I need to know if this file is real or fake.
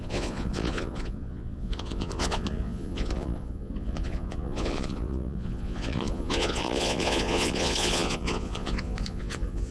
fake